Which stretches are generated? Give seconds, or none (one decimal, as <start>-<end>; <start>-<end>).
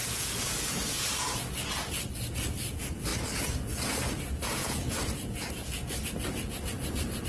0.0-1.1; 4.6-6.0